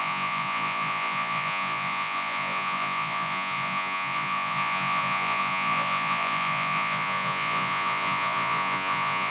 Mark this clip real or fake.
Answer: fake